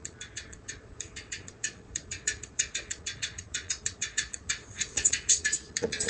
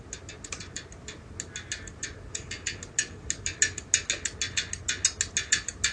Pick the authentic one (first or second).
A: second